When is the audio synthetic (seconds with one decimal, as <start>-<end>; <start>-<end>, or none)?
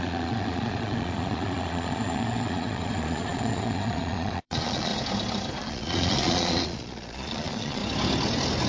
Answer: 0.0-4.9; 5.6-7.8